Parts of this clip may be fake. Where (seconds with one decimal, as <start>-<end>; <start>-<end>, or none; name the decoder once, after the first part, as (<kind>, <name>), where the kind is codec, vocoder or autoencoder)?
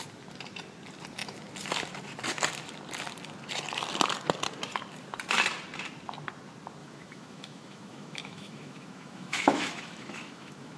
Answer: 6.8-10.8 (autoencoder, DAC-VAE)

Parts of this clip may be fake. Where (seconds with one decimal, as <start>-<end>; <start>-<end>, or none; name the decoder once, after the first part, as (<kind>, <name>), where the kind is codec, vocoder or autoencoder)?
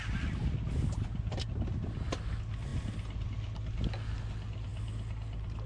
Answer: none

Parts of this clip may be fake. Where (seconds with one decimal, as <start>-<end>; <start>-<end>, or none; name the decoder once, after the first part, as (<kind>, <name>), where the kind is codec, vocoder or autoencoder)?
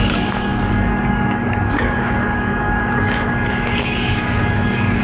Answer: 0.0-5.0 (codec, DAC)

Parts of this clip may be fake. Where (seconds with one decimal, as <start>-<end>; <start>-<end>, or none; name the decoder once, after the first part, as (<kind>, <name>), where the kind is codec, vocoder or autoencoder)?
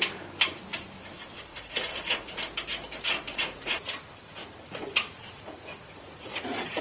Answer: 1.5-2.4 (vocoder, Vocos); 3.3-3.9; 4.4-6.8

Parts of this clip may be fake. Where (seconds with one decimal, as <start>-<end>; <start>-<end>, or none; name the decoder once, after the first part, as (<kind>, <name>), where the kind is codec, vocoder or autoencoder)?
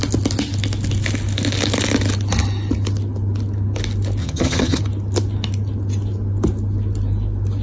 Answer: 4.2-4.8 (vocoder, HiFi-GAN)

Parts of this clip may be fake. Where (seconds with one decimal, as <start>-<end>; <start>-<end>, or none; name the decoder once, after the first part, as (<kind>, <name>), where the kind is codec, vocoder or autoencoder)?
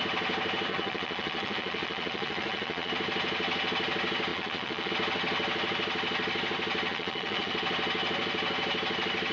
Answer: 0.7-2.9 (vocoder, Vocos); 4.3-4.9; 6.9-7.5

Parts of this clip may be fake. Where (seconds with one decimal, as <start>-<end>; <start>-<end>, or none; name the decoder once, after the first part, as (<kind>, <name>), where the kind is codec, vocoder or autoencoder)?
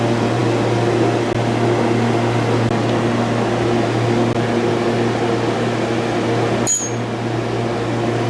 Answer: none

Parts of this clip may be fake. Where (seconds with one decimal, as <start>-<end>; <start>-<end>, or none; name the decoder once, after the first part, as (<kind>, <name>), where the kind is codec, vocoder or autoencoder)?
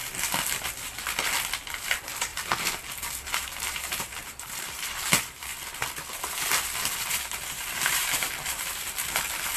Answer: 1.7-5.5 (vocoder, BigVGAN v2); 6.8-9.6